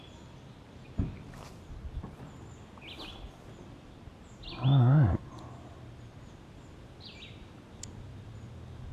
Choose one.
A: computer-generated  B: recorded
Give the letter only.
B